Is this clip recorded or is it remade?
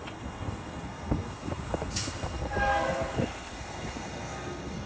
remade